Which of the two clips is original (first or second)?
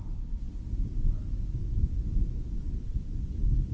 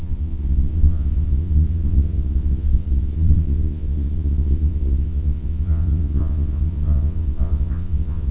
first